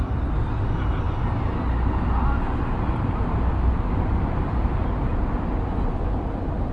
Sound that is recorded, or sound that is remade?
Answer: recorded